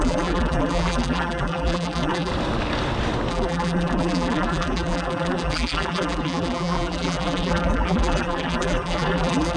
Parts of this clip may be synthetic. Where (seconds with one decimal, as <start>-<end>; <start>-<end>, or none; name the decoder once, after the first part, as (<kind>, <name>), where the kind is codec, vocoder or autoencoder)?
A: 0.0-2.3 (vocoder, BigVGAN v2); 3.3-9.6